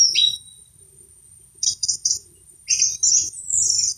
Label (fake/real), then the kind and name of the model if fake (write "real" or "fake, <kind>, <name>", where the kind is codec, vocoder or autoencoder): real